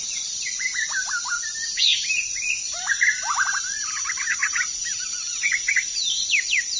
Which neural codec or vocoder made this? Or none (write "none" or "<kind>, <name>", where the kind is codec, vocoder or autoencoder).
vocoder, BigVGAN v2